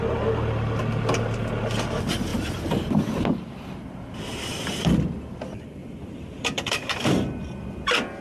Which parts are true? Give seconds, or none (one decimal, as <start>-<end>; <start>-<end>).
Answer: 0.0-2.3; 2.9-4.3; 5.3-5.8